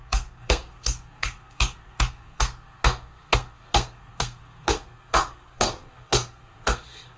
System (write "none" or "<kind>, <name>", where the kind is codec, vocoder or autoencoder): codec, SNAC